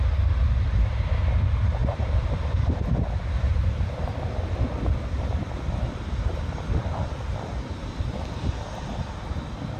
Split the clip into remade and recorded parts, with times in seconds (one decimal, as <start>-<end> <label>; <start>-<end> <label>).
0.0-1.8 recorded; 1.8-2.7 remade; 2.7-9.8 recorded